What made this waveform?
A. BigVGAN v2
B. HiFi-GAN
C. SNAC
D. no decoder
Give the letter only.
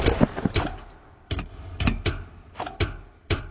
A